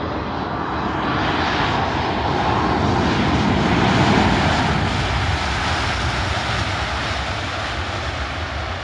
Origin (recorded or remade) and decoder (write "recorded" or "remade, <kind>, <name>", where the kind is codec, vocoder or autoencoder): recorded